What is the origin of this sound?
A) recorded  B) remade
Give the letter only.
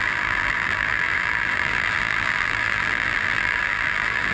B